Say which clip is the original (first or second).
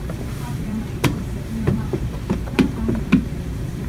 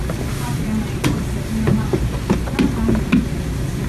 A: second